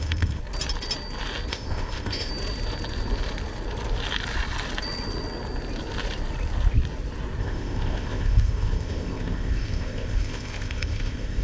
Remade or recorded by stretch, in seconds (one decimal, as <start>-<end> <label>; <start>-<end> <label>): 0.0-0.4 remade; 0.4-1.5 recorded; 1.5-2.3 remade; 2.3-7.4 recorded; 7.4-11.4 remade

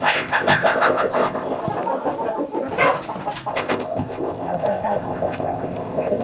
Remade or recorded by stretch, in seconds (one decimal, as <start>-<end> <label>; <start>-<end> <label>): 0.0-1.6 remade; 1.6-3.5 recorded; 3.5-6.2 remade

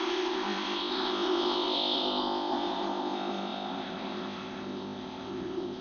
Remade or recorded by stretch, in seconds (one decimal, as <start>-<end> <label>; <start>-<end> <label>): 0.0-5.8 remade

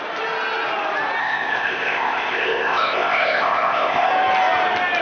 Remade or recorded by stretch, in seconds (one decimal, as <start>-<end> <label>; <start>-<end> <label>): 0.0-1.2 recorded; 1.2-4.1 remade; 4.1-5.0 recorded

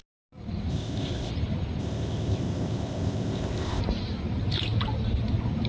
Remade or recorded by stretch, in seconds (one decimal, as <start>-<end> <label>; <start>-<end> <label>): 0.0-0.7 recorded; 0.7-1.3 remade; 1.3-1.8 recorded; 1.8-3.8 remade; 3.8-5.7 recorded